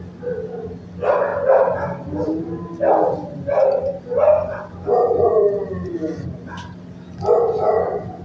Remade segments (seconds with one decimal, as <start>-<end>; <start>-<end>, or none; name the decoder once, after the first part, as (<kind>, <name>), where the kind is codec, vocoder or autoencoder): none